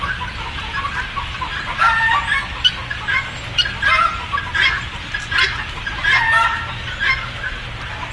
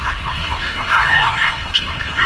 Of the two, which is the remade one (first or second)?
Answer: second